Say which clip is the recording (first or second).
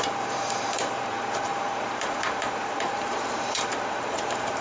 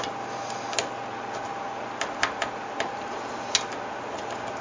second